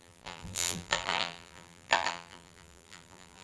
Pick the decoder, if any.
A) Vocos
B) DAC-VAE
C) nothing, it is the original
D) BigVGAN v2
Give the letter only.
D